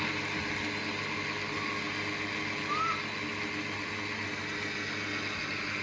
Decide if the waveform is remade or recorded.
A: recorded